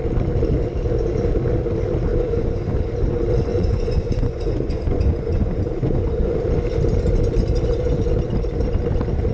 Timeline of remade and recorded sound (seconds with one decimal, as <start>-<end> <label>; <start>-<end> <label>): 0.0-2.1 recorded; 2.1-2.8 remade; 2.8-3.5 recorded; 3.5-6.3 remade; 6.3-9.3 recorded